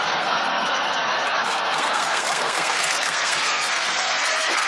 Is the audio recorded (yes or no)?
no